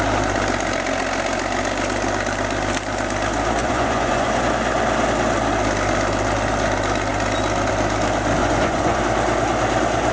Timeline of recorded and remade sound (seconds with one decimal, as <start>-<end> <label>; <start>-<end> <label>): 0.0-3.6 recorded; 3.6-4.4 remade; 4.4-8.4 recorded; 8.4-9.0 remade; 9.0-10.1 recorded